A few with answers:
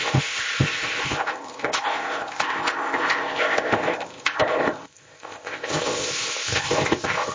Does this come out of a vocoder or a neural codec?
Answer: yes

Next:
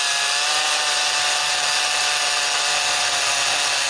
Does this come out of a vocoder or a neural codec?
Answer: no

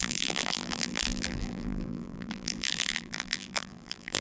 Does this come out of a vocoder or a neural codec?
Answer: yes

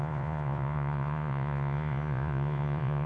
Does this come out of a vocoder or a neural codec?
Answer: yes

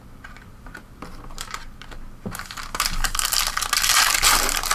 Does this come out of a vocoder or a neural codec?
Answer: no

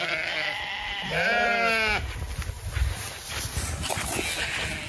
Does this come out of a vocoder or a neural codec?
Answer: no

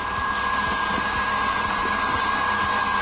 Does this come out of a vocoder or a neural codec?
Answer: no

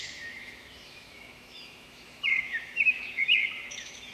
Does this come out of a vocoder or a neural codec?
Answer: yes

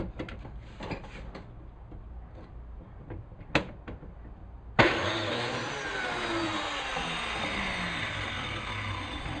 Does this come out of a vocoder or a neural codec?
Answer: no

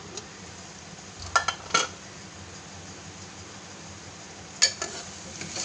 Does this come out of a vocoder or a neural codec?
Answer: no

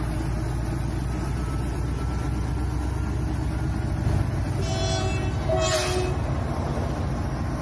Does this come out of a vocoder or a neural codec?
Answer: no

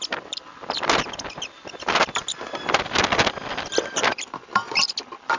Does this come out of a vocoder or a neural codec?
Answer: no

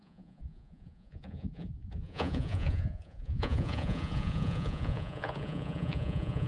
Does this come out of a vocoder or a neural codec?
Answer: yes